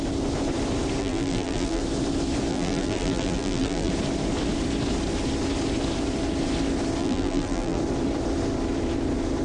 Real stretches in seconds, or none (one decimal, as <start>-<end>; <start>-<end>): 0.0-1.0; 1.8-2.5; 3.9-7.0; 7.8-9.4